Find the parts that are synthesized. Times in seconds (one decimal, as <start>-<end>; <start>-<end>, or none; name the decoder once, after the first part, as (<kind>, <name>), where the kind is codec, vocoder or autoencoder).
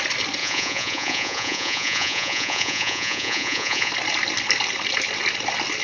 0.4-3.9 (vocoder, Vocos)